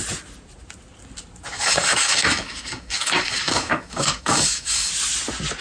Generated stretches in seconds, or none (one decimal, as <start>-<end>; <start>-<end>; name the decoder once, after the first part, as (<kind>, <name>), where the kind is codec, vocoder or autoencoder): 1.5-4.9 (codec, DAC)

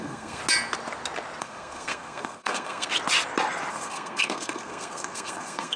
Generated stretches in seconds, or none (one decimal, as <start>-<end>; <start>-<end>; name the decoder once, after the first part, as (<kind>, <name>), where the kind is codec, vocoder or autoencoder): 0.0-0.4 (codec, SNAC); 1.4-2.9; 3.7-5.8

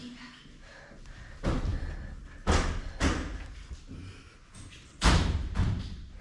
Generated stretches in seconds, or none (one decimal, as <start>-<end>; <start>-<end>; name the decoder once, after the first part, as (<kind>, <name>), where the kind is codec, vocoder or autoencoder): 4.9-5.6 (vocoder, BigVGAN v2)

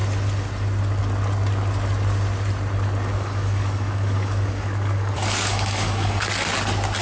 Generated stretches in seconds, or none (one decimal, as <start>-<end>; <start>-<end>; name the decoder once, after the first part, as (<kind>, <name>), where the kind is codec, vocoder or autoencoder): 3.1-6.3 (codec, DAC)